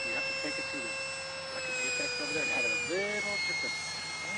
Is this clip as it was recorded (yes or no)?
yes